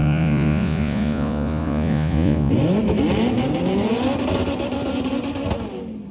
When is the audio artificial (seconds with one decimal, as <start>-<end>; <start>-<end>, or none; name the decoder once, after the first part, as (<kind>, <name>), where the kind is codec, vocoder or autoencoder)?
0.0-2.5 (vocoder, Vocos)